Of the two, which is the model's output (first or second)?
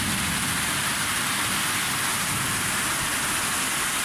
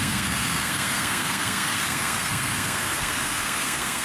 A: second